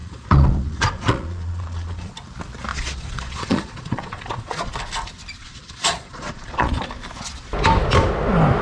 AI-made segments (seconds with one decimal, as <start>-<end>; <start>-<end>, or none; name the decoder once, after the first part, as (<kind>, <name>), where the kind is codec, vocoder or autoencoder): 0.0-2.1 (vocoder, Vocos); 2.7-4.7; 5.4-6.8